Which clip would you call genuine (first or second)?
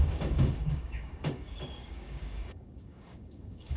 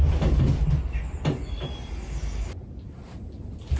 second